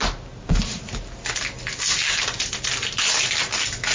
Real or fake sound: real